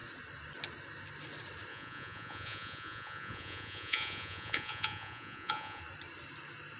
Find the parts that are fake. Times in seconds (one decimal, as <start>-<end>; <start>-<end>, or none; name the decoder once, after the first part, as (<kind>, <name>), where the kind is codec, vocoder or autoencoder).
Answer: 1.7-5.8 (vocoder, Vocos)